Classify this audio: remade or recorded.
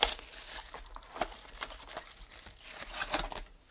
recorded